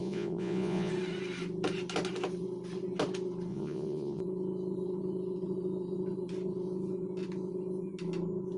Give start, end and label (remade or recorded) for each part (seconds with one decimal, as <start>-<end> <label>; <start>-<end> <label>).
0.0-0.9 remade; 0.9-3.5 recorded; 3.5-4.2 remade; 4.2-8.6 recorded